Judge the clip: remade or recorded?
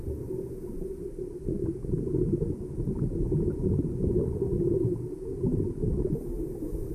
recorded